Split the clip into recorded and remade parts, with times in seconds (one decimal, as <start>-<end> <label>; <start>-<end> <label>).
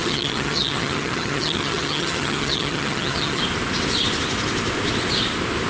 0.0-3.4 remade; 3.4-5.7 recorded